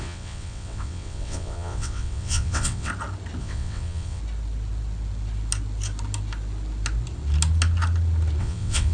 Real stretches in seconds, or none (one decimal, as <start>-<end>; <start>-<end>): 2.9-3.4; 4.2-8.4